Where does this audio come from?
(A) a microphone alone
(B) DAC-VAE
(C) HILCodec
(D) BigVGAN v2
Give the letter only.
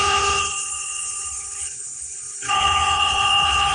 C